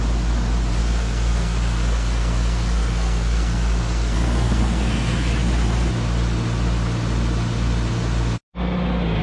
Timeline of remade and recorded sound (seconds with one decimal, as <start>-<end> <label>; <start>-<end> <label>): 0.0-0.8 recorded; 0.8-5.3 remade; 5.3-9.2 recorded